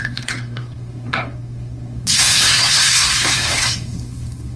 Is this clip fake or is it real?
fake